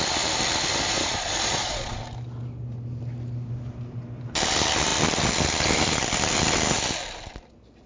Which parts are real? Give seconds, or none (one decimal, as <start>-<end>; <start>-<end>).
0.0-0.7; 2.0-7.9